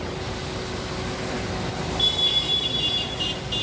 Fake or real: real